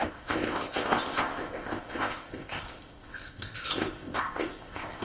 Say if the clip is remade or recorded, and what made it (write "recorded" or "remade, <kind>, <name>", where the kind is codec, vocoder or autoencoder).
remade, codec, ZipCodec